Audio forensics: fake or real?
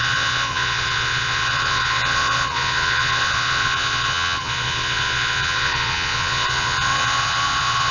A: fake